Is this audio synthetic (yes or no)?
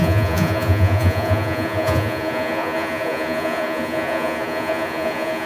yes